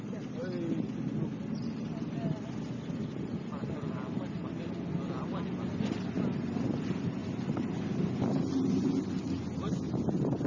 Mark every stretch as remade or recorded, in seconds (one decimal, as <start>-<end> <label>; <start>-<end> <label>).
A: 0.0-10.5 recorded